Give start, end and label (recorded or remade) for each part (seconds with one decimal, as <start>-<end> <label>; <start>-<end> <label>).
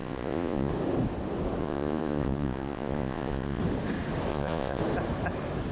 0.0-0.7 remade; 0.7-1.6 recorded; 1.6-3.6 remade; 3.6-4.3 recorded; 4.3-4.8 remade; 4.8-5.7 recorded